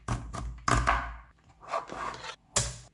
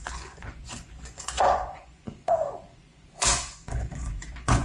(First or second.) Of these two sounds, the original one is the first